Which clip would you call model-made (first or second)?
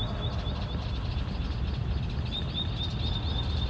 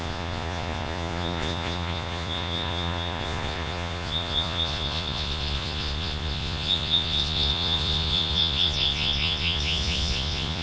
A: second